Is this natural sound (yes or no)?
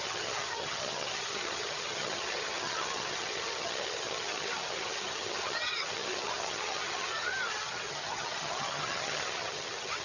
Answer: no